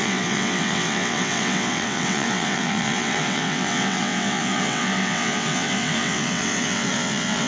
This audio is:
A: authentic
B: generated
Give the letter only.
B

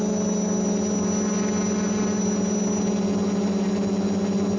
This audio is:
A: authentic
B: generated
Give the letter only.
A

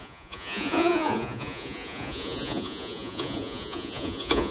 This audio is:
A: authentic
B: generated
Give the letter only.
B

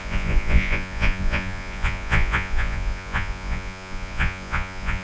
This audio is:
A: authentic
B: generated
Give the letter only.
B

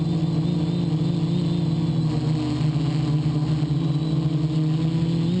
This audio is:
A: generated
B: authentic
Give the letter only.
B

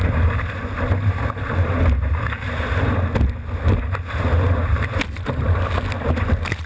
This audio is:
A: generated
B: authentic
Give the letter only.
B